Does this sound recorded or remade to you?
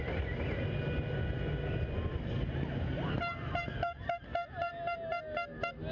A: recorded